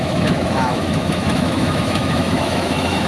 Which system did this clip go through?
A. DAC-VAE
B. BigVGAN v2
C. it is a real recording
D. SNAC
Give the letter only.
A